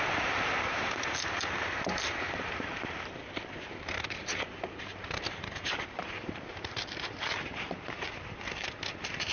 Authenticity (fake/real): fake